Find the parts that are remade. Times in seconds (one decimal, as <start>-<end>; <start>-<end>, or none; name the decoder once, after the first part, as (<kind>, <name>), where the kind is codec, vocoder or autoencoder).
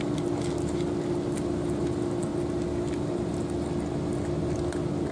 none